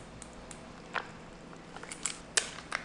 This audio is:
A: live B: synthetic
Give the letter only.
A